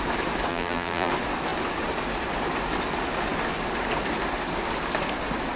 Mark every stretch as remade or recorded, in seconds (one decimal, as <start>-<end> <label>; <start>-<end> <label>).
0.0-0.5 recorded; 0.5-1.1 remade; 1.1-5.6 recorded